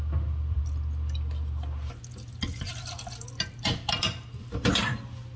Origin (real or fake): real